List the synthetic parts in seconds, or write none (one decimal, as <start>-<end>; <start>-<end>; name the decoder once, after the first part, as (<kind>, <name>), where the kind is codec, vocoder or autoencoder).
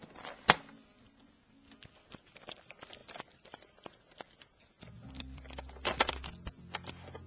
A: 3.0-6.1 (vocoder, BigVGAN v2)